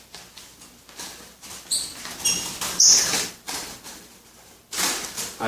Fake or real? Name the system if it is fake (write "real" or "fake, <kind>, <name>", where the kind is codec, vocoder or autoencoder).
real